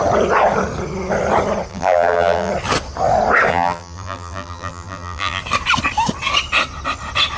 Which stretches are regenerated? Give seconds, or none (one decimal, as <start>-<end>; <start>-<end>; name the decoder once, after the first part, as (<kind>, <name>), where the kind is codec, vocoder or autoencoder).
1.7-2.5 (vocoder, BigVGAN v2); 3.5-5.4

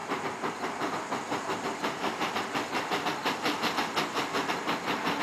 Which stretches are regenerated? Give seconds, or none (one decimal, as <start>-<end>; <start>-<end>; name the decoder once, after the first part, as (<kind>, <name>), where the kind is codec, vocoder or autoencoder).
0.0-0.9 (vocoder, BigVGAN v2); 1.8-2.9